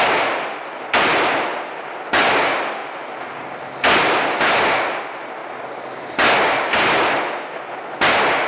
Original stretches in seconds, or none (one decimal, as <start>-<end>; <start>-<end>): 0.0-8.5